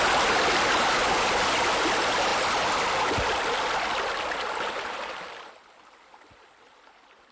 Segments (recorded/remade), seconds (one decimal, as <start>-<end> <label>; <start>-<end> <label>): 0.0-7.3 recorded